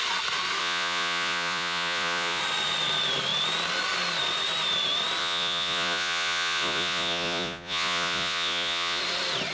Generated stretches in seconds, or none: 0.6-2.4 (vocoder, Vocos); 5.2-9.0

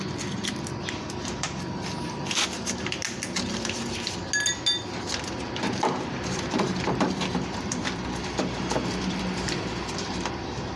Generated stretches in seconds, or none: 0.0-3.0 (vocoder, BigVGAN v2); 5.4-10.8

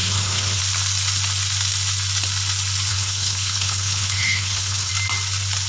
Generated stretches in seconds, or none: 0.0-0.6 (codec, HILCodec); 2.9-4.9

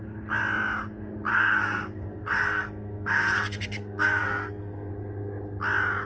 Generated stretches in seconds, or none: 1.3-4.9 (codec, SNAC)

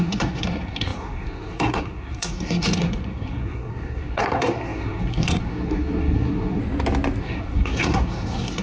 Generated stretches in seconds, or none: 0.0-6.6 (codec, SNAC); 7.2-8.6

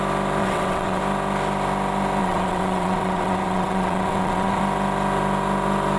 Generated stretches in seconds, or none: 0.4-1.0 (vocoder, WaveNeXt); 2.2-4.6